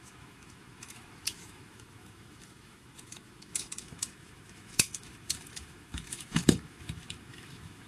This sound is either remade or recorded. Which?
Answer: remade